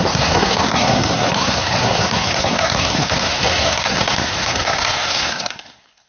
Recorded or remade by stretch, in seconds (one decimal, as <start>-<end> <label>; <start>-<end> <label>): 0.0-6.1 remade